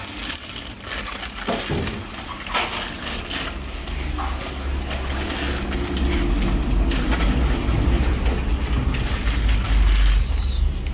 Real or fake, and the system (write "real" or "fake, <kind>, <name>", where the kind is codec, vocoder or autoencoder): real